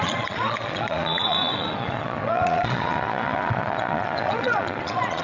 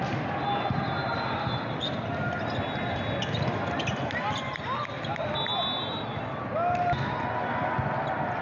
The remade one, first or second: first